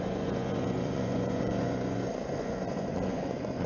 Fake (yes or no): yes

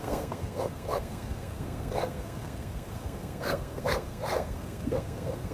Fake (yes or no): yes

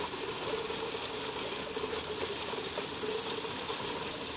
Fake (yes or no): no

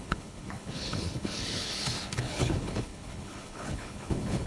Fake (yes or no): yes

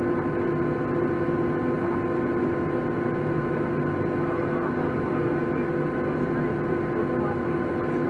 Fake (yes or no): no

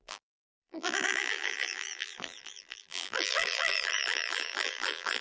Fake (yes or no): yes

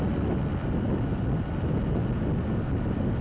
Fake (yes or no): no